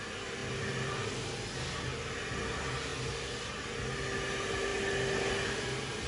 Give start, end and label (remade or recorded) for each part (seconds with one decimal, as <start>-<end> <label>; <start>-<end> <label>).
0.0-6.1 recorded